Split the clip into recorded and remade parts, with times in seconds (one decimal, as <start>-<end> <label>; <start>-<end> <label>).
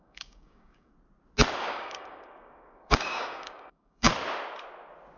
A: 0.0-0.9 remade; 0.9-1.7 recorded; 1.7-4.1 remade; 4.1-5.2 recorded